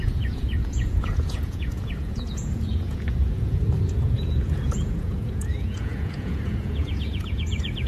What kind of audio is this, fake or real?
fake